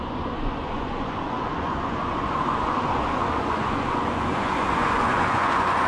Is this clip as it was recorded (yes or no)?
no